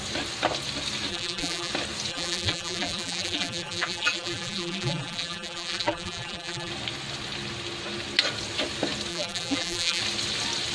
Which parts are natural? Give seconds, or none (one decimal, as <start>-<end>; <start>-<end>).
0.0-1.1; 1.7-2.1; 6.7-9.1; 10.0-10.7